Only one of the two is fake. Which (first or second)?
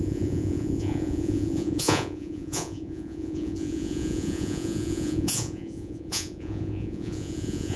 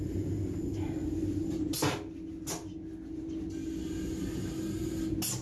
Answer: first